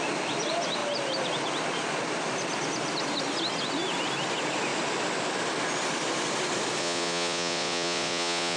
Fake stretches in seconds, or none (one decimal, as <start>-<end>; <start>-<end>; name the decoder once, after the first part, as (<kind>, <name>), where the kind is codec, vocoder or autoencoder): 6.8-8.6 (vocoder, Vocos)